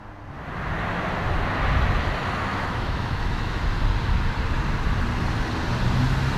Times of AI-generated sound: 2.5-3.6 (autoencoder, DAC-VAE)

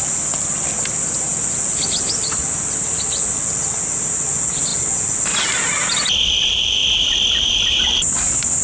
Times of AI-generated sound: none

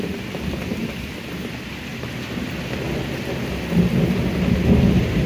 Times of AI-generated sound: 1.9-2.6 (vocoder, BigVGAN v2)

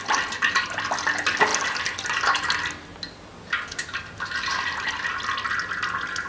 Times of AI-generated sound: none

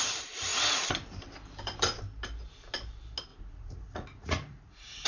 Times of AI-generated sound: 3.3-5.1 (vocoder, Vocos)